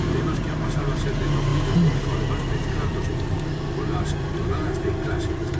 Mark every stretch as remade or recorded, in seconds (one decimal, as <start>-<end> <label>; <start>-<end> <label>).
0.0-1.5 remade; 1.5-3.2 recorded; 3.2-5.6 remade

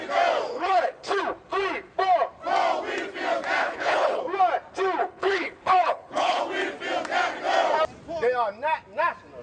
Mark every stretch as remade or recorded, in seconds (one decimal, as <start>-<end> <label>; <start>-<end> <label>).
0.0-0.5 recorded; 0.5-1.2 remade; 1.2-3.6 recorded; 3.6-4.2 remade; 4.2-5.0 recorded; 5.0-6.4 remade; 6.4-9.4 recorded

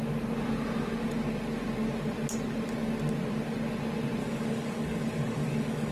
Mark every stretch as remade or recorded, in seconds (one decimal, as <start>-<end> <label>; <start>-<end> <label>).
0.0-4.2 recorded; 4.2-5.9 remade

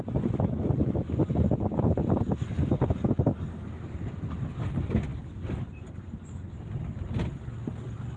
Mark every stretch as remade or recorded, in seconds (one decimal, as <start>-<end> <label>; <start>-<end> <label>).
0.0-8.2 recorded

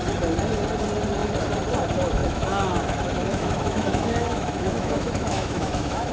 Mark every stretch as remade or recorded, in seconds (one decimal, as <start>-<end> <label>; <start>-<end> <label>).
0.0-2.2 recorded; 2.2-2.8 remade; 2.8-3.3 recorded; 3.3-6.1 remade